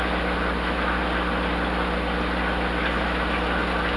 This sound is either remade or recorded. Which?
recorded